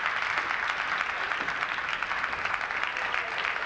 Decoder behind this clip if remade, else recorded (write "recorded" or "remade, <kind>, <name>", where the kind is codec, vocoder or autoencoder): recorded